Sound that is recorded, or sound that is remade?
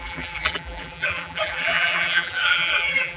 remade